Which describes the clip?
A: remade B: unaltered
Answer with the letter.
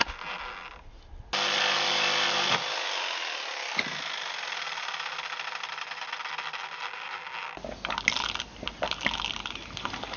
B